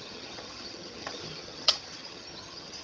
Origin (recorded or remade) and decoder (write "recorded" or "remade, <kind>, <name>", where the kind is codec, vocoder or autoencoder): remade, vocoder, HiFi-GAN